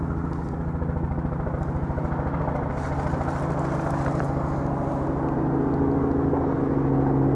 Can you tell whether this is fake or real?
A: real